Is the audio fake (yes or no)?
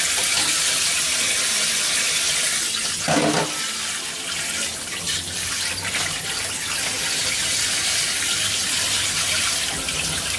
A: no